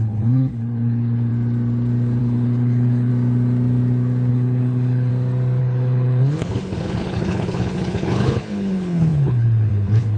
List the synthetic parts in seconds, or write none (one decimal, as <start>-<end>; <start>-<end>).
0.0-1.3; 2.2-3.1; 4.3-5.1; 5.6-10.2